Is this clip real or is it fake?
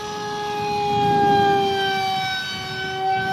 real